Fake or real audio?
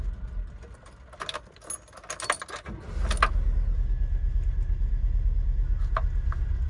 real